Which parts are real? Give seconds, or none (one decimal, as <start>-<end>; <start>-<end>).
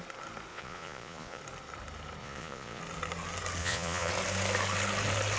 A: 0.0-0.5; 1.4-2.2; 2.8-3.6; 4.1-5.4